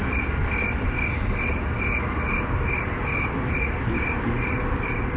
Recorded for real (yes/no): yes